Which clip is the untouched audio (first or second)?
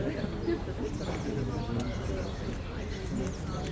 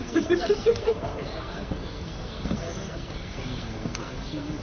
first